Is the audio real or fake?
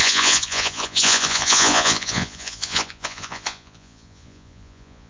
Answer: fake